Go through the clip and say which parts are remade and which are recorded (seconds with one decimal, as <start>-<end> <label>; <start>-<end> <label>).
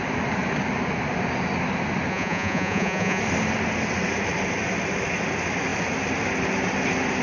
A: 0.0-2.1 recorded; 2.1-3.2 remade; 3.2-7.2 recorded